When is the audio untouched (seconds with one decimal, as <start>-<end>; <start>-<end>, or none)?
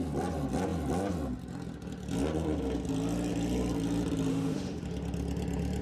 0.0-4.3; 4.8-5.8